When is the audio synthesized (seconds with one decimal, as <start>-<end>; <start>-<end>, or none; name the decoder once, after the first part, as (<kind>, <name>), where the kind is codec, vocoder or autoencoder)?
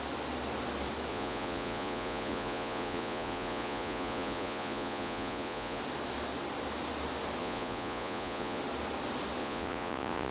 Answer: 1.1-5.8 (vocoder, Vocos); 7.4-8.6; 9.4-10.3